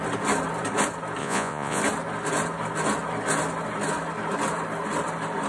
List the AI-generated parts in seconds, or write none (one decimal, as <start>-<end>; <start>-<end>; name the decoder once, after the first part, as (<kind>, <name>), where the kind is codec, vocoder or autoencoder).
1.2-1.8 (vocoder, Vocos)